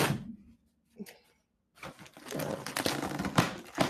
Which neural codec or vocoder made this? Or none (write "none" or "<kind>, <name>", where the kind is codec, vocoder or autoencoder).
none